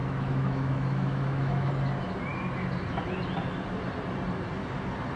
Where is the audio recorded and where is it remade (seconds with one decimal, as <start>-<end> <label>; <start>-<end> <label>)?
0.0-1.7 remade; 1.7-5.2 recorded